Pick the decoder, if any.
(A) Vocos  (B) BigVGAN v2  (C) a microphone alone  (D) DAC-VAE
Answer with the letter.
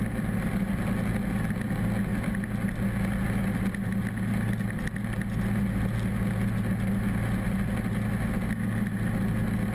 C